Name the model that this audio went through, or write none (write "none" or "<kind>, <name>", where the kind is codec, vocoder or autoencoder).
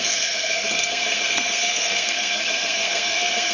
codec, SNAC